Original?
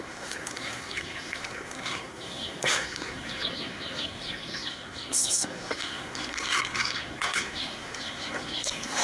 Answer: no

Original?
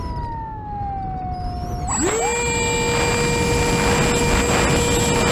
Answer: yes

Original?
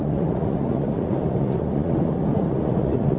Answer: no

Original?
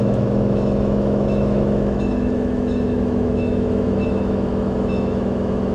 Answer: no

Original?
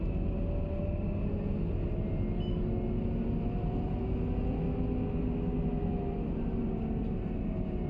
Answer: yes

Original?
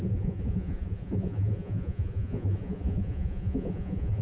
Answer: no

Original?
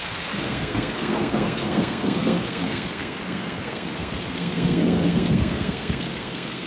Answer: no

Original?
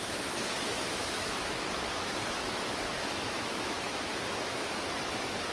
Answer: no